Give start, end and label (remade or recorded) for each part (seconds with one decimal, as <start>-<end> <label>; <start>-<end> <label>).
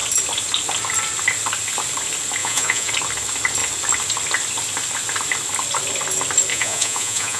0.0-2.4 recorded; 2.4-2.9 remade; 2.9-6.5 recorded; 6.5-7.4 remade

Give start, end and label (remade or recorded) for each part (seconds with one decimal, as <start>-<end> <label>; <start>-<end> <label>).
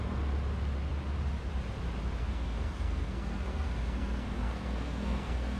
0.0-2.2 recorded; 2.2-5.6 remade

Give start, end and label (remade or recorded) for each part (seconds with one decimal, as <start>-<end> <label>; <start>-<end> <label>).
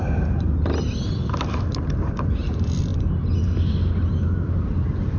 0.0-5.2 recorded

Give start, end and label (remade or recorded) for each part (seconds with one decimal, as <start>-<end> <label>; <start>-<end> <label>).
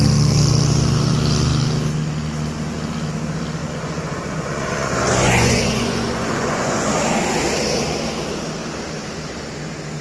0.0-3.6 recorded; 3.6-6.9 remade; 6.9-10.0 recorded